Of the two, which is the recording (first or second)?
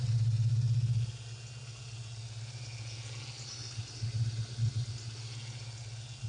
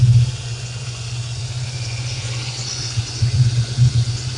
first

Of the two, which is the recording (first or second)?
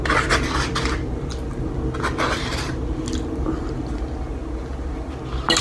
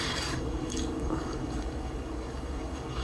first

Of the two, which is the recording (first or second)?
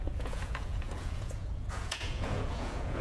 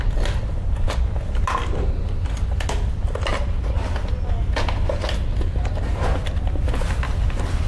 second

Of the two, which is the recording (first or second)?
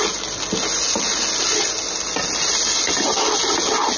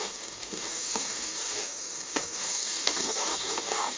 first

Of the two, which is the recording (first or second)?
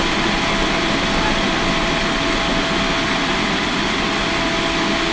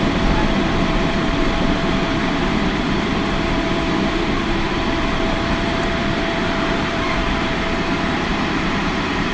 first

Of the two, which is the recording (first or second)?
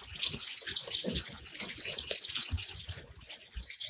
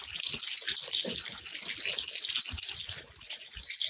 second